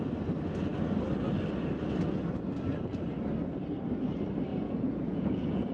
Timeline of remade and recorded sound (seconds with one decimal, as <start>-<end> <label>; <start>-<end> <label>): 0.0-4.5 recorded; 4.5-5.7 remade